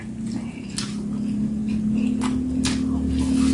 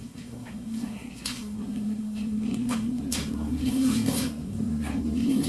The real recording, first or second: first